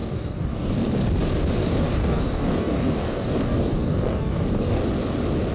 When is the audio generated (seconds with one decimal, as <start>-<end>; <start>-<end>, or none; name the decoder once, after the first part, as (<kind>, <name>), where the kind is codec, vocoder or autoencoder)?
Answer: 0.0-0.7 (codec, DAC); 1.6-4.8